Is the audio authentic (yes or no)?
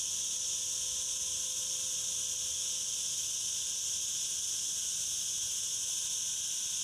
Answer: yes